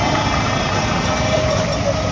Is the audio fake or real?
real